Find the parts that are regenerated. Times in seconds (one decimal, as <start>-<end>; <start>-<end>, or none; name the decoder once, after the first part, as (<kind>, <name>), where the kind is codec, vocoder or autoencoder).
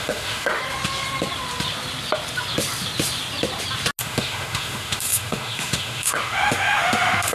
0.0-0.6 (autoencoder, DAC-VAE); 4.0-7.3